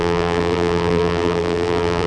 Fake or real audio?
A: fake